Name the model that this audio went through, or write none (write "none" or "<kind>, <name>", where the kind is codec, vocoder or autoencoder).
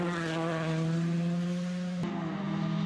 none